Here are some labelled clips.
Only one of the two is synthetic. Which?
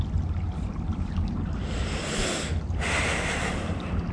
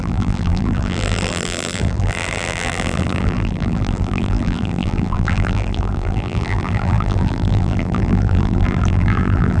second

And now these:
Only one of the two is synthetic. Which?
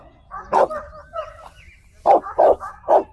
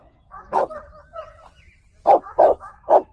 second